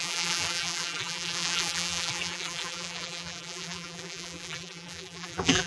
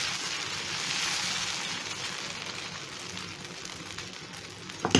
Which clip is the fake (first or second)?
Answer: first